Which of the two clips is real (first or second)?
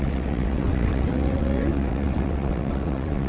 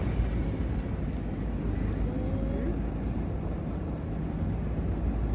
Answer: second